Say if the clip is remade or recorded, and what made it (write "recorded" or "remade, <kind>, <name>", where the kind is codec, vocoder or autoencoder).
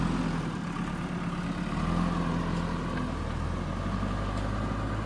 recorded